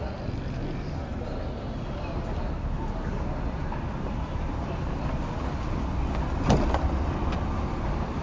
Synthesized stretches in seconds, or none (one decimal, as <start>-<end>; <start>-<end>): none